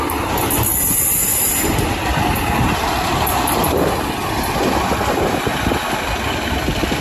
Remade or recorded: recorded